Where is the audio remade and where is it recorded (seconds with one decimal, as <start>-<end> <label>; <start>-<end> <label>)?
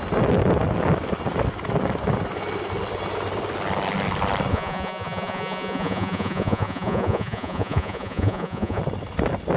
0.0-4.5 recorded; 4.5-8.8 remade; 8.8-9.6 recorded